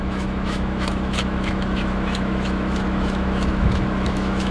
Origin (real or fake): fake